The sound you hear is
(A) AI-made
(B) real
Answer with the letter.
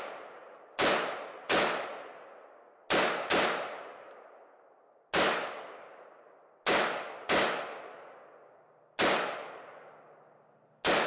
B